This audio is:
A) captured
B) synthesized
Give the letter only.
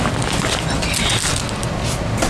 A